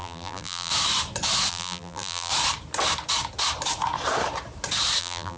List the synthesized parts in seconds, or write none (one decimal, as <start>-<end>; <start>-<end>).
0.0-0.7; 1.5-2.3; 5.0-5.4

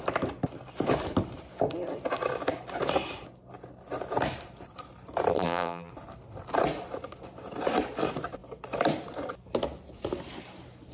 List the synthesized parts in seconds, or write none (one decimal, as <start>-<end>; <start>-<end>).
5.3-5.9

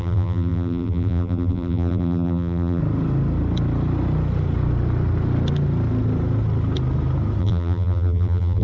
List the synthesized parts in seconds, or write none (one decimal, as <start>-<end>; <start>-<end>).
0.0-2.8; 7.4-8.6

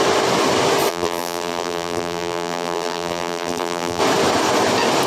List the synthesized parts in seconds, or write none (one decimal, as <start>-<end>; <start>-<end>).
0.9-4.0

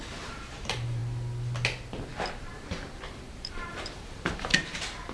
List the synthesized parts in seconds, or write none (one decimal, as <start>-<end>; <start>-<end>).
0.0-1.0; 2.5-5.1

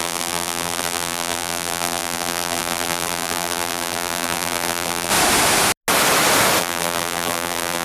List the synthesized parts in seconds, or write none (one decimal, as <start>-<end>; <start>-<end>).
0.0-5.1; 6.6-7.8